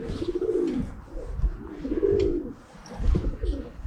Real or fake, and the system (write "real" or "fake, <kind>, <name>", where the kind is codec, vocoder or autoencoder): real